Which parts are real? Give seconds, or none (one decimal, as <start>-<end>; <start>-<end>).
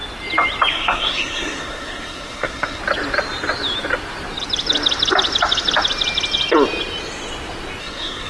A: 0.0-0.7; 2.8-7.8